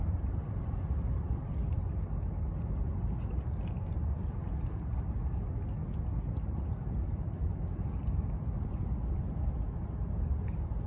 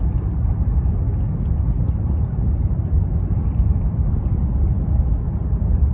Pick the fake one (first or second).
second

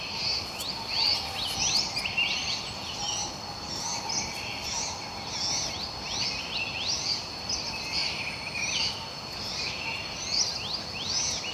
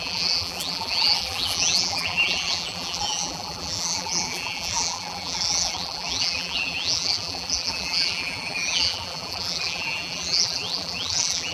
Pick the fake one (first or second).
second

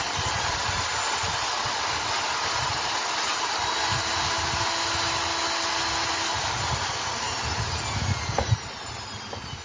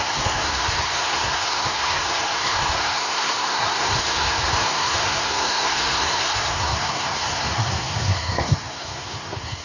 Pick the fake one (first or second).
second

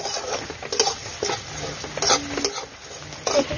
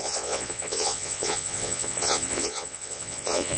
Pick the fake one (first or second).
second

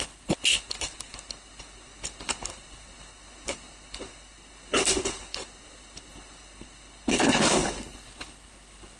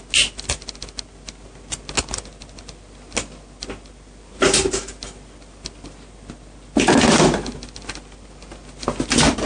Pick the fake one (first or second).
first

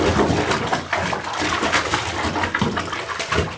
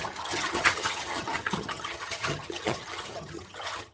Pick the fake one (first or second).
second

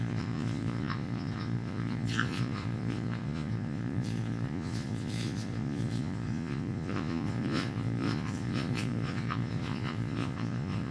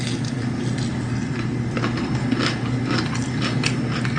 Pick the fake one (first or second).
first